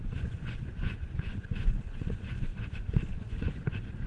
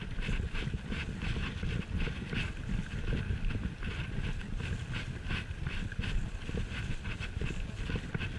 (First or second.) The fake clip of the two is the first